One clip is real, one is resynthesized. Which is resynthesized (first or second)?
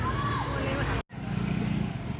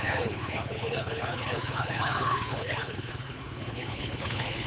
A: second